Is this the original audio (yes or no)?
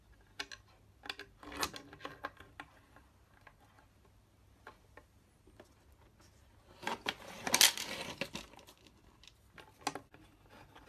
yes